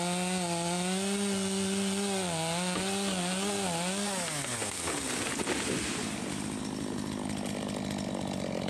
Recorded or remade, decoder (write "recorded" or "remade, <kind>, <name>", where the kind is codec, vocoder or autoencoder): recorded